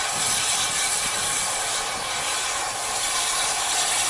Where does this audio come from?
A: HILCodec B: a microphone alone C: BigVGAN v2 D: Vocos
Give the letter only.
B